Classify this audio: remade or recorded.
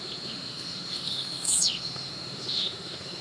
remade